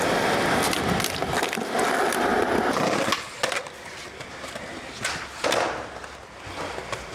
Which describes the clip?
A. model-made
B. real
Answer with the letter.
B